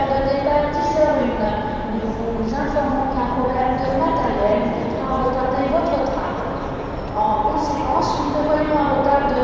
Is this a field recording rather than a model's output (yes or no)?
yes